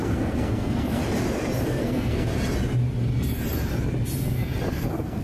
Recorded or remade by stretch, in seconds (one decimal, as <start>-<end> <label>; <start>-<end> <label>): 0.0-1.0 remade; 1.0-1.8 recorded; 1.8-2.3 remade; 2.3-4.7 recorded; 4.7-5.2 remade